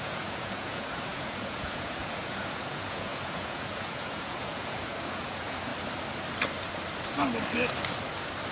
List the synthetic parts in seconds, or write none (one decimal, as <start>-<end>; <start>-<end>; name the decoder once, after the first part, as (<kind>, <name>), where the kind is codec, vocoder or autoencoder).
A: 0.0-5.7 (vocoder, Vocos)